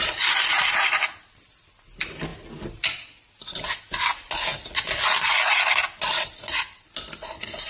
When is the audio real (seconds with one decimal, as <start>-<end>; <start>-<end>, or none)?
0.0-7.7